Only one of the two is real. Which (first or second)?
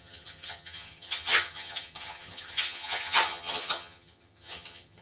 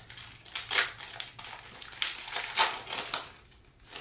second